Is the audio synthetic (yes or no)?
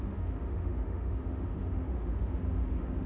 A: yes